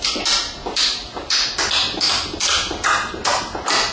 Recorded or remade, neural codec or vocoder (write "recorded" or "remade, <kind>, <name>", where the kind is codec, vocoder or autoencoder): recorded